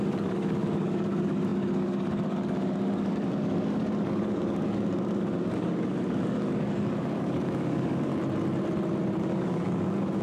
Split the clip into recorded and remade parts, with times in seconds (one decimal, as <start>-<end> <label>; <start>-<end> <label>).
0.0-8.1 remade; 8.1-9.2 recorded; 9.2-10.2 remade